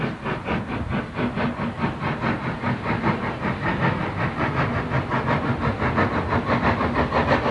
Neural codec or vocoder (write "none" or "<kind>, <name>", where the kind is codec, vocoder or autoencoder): none